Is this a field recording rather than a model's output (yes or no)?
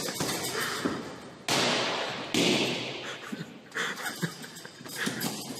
yes